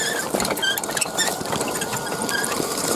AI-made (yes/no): yes